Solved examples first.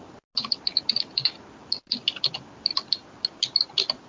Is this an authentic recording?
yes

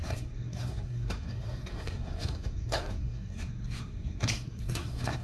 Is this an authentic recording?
no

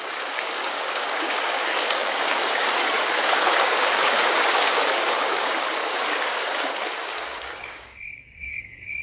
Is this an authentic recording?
no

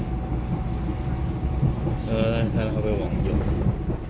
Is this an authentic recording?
yes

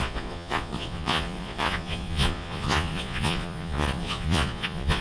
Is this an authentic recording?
no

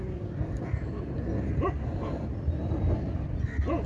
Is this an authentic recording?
yes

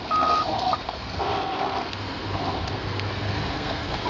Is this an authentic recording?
no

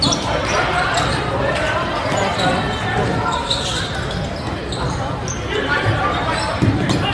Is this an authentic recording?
yes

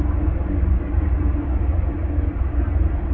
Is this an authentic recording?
yes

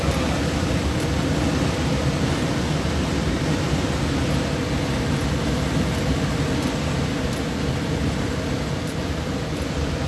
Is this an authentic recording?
yes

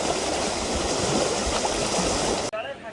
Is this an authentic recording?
yes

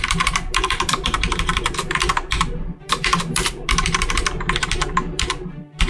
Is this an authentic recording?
no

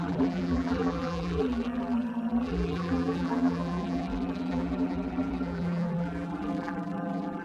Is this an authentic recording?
no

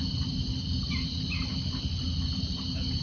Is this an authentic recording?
yes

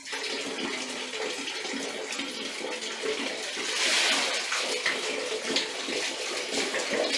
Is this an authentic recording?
yes